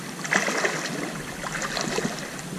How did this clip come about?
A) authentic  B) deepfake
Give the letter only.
A